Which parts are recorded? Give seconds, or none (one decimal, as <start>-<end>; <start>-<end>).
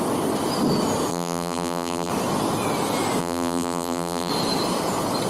0.0-1.1; 2.1-3.2; 4.3-5.3